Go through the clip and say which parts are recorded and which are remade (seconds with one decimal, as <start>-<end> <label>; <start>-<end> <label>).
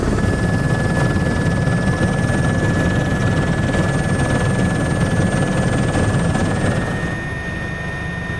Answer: 0.0-8.4 recorded